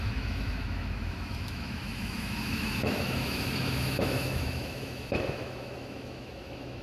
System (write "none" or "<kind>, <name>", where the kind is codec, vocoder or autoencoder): autoencoder, DAC-VAE